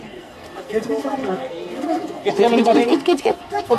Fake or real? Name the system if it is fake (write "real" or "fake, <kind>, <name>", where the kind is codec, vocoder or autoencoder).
fake, codec, SNAC